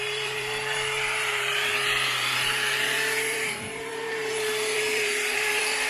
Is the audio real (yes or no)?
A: no